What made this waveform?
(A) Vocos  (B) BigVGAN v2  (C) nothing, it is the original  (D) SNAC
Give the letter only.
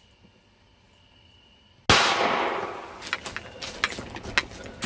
C